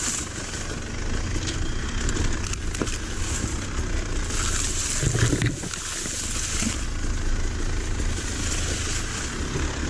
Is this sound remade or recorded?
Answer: recorded